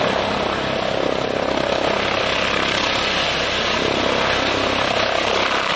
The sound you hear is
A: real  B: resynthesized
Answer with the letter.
A